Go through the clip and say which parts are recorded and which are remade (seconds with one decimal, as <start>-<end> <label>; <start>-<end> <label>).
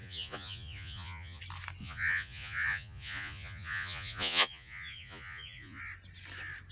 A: 0.0-1.4 remade; 1.4-1.8 recorded; 1.8-5.8 remade; 5.8-6.7 recorded